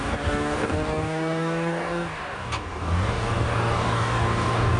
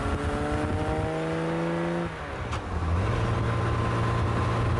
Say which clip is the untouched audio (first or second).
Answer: second